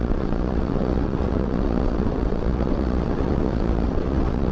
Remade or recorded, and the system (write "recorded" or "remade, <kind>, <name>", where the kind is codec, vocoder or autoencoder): remade, vocoder, WaveNeXt